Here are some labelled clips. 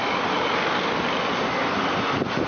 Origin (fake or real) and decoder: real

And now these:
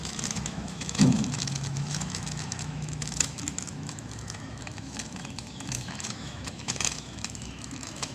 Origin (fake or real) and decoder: fake, autoencoder, DAC-VAE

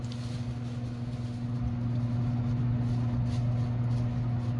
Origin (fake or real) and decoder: real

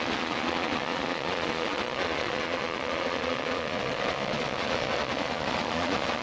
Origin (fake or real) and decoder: fake, vocoder, Vocos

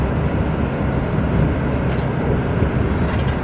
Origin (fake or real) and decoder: real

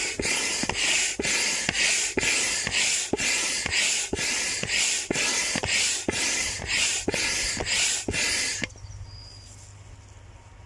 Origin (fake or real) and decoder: real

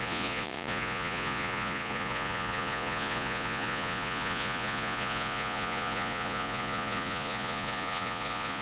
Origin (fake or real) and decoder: fake, vocoder, Vocos